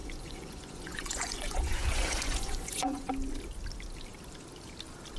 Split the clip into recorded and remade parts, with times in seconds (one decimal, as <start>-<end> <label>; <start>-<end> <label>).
0.0-3.1 remade; 3.1-5.2 recorded